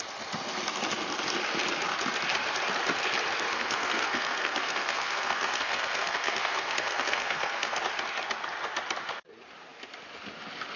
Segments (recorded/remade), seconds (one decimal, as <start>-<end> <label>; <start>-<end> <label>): 0.0-3.5 recorded; 3.5-7.8 remade; 7.8-10.8 recorded